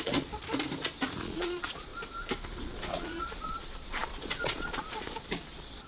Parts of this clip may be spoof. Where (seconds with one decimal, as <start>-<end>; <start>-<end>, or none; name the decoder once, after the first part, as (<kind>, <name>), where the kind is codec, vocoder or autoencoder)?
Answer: 0.0-0.4 (vocoder, Vocos); 1.0-1.9; 2.6-5.9

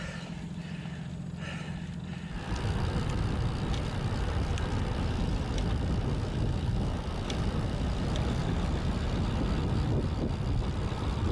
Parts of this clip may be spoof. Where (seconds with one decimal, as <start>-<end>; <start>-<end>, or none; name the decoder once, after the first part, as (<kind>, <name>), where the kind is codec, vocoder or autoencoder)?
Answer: none

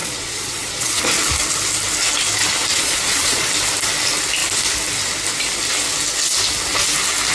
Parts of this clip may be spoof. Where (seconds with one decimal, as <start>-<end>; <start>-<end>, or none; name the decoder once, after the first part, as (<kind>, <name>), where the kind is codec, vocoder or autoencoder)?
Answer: 0.0-1.0 (vocoder, Vocos); 2.7-3.5

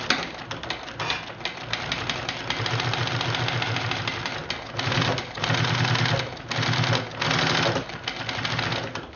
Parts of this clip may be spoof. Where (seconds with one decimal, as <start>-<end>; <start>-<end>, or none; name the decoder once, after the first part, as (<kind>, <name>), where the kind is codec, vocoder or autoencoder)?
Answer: none

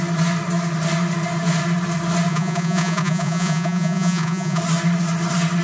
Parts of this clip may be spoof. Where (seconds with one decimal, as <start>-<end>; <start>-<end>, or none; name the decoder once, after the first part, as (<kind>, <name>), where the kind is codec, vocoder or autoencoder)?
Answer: 2.3-4.6 (vocoder, Vocos)

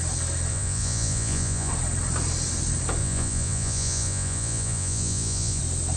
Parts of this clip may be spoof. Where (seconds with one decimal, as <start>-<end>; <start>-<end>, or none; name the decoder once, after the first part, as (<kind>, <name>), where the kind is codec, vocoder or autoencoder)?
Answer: 0.5-1.7 (vocoder, Vocos); 3.0-5.6

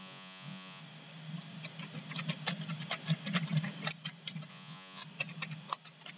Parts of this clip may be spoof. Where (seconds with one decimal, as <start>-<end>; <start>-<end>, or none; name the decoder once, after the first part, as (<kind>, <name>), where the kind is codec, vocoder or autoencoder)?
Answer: 0.0-0.8 (vocoder, Vocos); 4.5-5.0